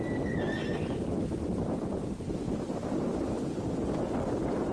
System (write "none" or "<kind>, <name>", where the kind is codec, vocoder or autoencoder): none